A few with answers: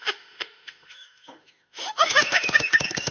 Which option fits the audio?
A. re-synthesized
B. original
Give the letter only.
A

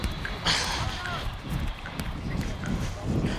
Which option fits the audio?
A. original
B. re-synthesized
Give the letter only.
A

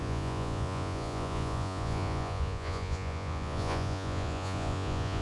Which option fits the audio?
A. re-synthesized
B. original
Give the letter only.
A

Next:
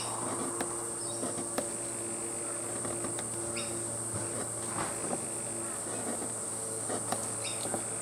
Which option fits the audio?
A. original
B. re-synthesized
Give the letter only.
A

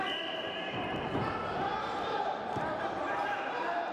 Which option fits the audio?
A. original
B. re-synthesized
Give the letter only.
B